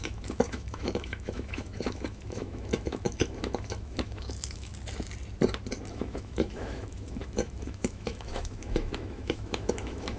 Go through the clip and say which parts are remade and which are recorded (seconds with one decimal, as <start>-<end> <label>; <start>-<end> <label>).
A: 0.0-4.7 remade; 4.7-5.9 recorded; 5.9-10.2 remade